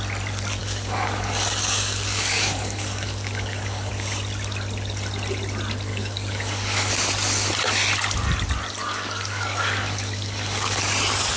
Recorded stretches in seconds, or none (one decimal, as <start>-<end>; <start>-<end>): 0.0-0.6; 3.9-5.9; 6.9-8.8; 10.8-11.4